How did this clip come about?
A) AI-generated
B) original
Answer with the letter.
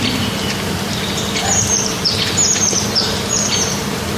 A